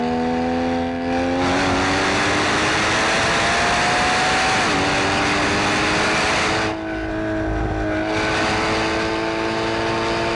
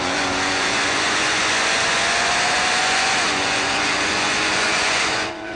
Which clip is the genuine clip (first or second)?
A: first